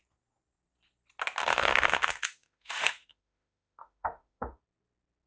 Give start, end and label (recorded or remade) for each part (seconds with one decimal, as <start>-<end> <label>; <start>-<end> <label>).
0.0-1.4 recorded; 1.4-4.6 remade; 4.6-5.3 recorded